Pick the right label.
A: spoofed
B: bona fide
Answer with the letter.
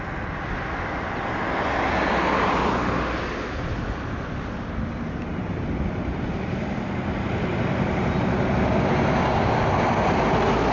B